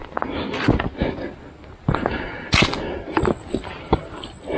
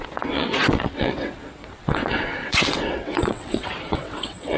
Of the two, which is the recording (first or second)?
first